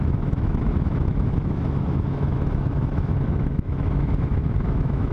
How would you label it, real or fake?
fake